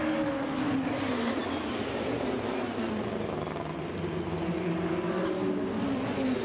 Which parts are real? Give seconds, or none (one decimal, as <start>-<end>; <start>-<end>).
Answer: 0.0-6.4